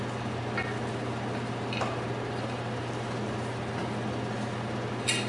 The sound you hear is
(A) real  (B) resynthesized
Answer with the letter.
A